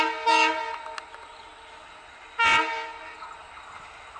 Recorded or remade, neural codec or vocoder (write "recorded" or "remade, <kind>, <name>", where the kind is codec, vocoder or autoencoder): recorded